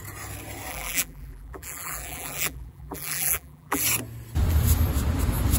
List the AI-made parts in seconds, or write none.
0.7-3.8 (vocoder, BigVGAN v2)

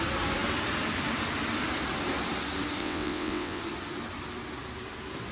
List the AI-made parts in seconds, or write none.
2.8-3.6 (vocoder, WaveNeXt)

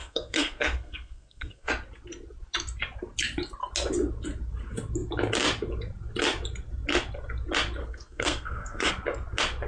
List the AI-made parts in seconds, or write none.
0.0-1.7 (codec, SNAC); 7.8-8.9

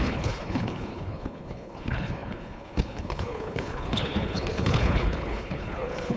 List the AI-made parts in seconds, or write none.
0.0-6.2 (codec, HILCodec)

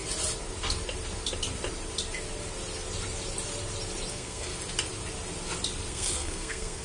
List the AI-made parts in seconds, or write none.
4.1-4.5 (codec, SNAC); 5.9-6.8

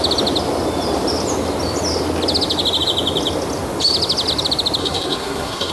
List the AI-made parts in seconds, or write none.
4.8-5.7 (codec, SNAC)

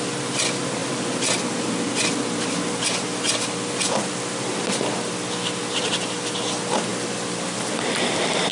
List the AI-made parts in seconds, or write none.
none